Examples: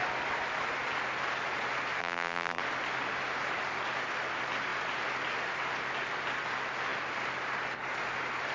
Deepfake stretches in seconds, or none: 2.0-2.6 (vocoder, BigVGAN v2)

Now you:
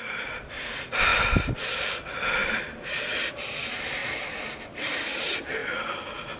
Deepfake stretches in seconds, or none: 0.0-1.1 (vocoder, BigVGAN v2); 3.3-5.6

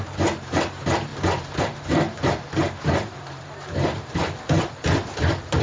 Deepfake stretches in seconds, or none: 0.0-4.2 (vocoder, BigVGAN v2)

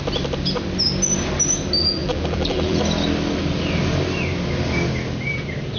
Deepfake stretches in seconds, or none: 2.0-2.8 (vocoder, BigVGAN v2)